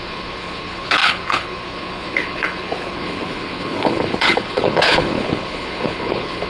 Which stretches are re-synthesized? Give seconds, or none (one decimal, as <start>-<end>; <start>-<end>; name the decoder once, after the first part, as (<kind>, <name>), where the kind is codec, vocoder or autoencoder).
0.0-6.5 (codec, HILCodec)